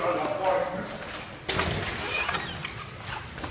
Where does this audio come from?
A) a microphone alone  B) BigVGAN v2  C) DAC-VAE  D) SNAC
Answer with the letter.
A